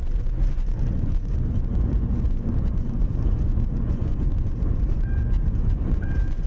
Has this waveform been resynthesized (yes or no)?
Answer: yes